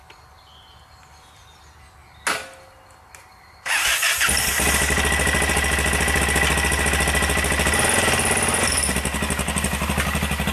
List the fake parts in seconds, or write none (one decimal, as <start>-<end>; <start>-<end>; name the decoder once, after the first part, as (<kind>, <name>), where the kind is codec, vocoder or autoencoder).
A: none

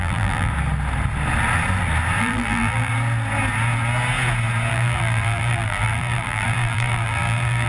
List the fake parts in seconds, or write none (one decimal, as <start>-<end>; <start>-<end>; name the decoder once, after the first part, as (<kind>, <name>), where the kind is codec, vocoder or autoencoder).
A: 0.0-0.5 (vocoder, BigVGAN v2); 2.2-2.9; 4.7-7.7

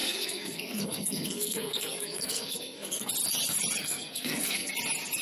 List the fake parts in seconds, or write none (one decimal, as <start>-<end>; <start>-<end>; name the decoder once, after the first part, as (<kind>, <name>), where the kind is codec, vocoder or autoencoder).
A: 0.0-3.1 (codec, SNAC); 3.8-4.7

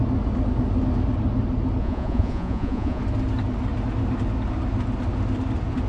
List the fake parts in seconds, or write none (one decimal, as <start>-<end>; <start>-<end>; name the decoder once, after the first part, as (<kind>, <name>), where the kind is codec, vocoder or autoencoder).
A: 1.8-3.0 (vocoder, Vocos)

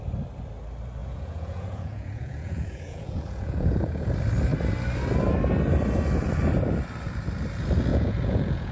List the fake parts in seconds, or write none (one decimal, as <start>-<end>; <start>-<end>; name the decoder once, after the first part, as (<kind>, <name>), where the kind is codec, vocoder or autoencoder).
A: 1.0-4.1 (vocoder, Vocos); 7.9-8.7

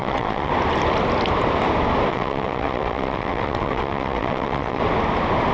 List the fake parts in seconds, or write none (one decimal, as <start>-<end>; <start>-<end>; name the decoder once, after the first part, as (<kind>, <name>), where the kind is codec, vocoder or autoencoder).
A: 0.0-0.5 (vocoder, WaveNeXt); 2.1-4.8

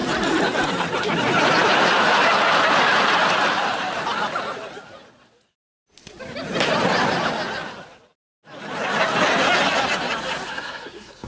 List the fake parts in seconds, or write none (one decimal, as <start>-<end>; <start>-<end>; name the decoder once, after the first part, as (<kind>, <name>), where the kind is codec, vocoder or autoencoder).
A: 10.5-11.3 (codec, SNAC)